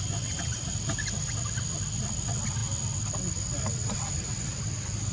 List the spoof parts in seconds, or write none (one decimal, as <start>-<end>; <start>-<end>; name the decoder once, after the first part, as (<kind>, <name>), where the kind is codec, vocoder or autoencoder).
none